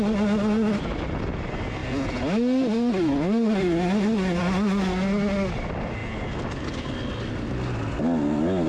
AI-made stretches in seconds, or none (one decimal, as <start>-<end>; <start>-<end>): none